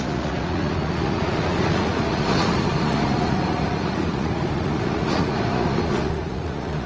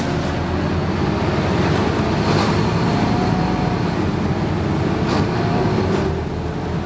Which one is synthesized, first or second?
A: first